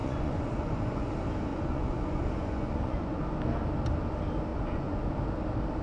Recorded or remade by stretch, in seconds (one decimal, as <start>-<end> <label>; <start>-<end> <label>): 0.0-1.1 remade; 1.1-1.5 recorded; 1.5-3.2 remade; 3.2-4.5 recorded; 4.5-5.2 remade; 5.2-5.8 recorded